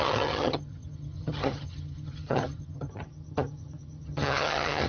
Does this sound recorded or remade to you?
remade